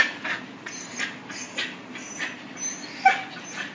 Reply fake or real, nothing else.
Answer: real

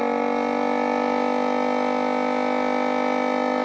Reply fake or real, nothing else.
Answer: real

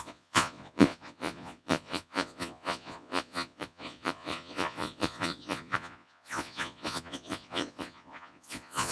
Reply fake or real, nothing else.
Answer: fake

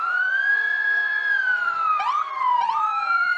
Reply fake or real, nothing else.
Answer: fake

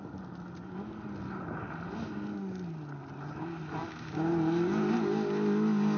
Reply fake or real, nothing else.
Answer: real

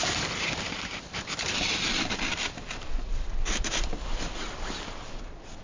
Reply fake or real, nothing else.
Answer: real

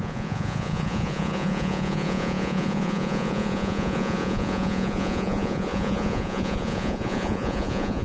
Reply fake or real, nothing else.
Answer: fake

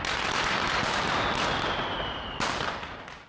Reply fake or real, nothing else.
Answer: real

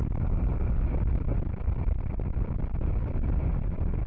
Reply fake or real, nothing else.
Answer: real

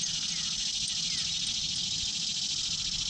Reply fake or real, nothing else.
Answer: real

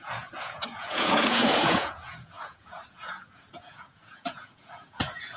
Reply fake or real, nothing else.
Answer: fake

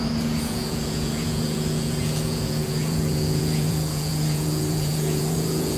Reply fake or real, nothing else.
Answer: fake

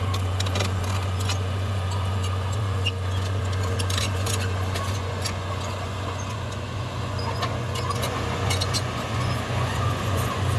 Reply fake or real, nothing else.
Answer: fake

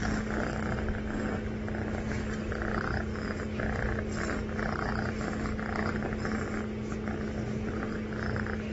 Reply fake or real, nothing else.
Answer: real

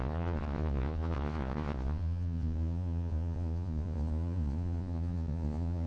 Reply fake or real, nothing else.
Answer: fake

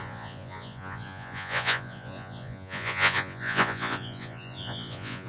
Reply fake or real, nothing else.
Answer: fake